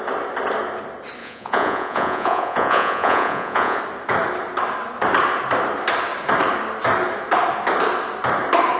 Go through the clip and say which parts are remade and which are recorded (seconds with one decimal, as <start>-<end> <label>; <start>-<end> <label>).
0.0-1.2 recorded; 1.2-3.8 remade; 3.8-8.8 recorded